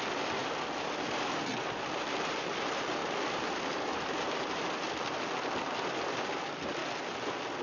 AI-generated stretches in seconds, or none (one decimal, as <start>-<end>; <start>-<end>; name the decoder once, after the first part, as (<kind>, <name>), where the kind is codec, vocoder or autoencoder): 0.0-6.8 (vocoder, BigVGAN v2)